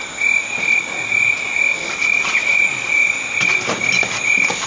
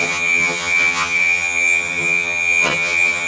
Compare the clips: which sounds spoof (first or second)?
second